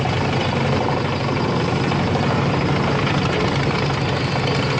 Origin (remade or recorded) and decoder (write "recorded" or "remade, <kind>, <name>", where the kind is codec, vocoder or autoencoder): recorded